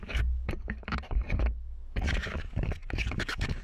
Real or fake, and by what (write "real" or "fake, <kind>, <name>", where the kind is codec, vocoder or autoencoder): fake, codec, DAC